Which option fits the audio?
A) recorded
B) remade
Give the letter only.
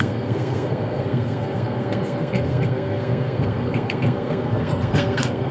B